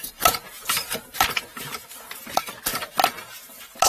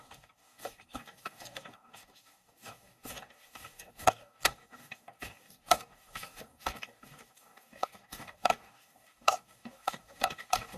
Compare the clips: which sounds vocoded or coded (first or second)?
second